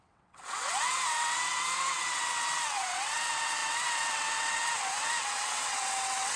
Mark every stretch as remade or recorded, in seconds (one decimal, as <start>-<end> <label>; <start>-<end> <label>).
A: 0.0-6.4 remade